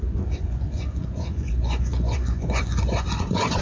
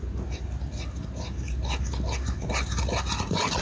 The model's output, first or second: first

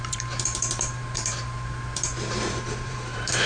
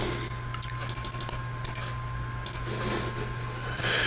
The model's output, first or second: first